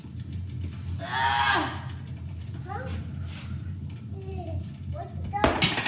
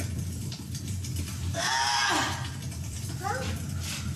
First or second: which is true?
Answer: first